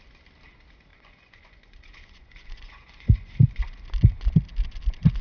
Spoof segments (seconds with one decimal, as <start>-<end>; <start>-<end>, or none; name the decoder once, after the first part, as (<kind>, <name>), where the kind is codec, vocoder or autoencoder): 0.9-3.3 (vocoder, Vocos)